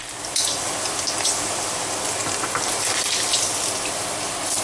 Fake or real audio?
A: real